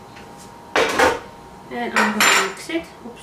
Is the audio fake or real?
real